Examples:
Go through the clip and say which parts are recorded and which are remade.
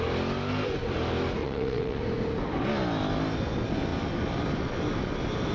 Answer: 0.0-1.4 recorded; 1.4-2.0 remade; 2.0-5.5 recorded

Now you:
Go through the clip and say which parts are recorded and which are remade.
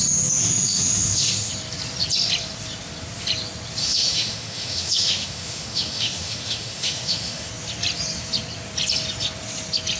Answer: 0.0-0.4 recorded; 0.4-1.5 remade; 1.5-3.8 recorded; 3.8-7.5 remade; 7.5-10.0 recorded